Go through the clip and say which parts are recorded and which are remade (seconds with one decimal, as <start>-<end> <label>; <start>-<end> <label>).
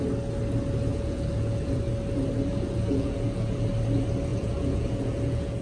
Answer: 0.0-0.9 recorded; 0.9-1.8 remade; 1.8-2.5 recorded; 2.5-3.7 remade; 3.7-4.3 recorded; 4.3-5.6 remade